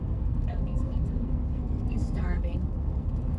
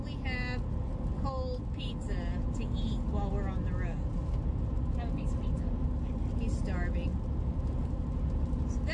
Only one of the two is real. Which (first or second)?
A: second